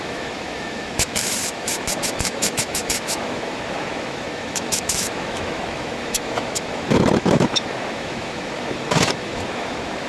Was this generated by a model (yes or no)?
yes